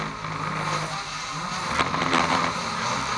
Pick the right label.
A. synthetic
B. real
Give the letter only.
B